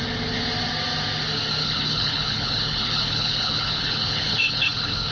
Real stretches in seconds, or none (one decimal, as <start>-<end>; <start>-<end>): 0.0-1.6